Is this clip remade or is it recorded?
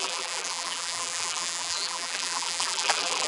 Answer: remade